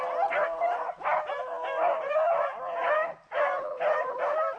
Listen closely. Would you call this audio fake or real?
real